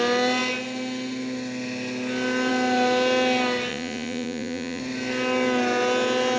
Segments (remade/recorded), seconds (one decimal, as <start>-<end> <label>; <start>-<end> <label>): 0.0-3.7 recorded; 3.7-4.8 remade; 4.8-6.4 recorded